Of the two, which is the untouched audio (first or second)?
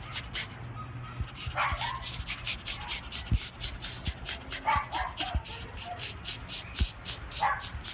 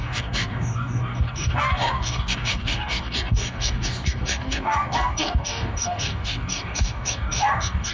first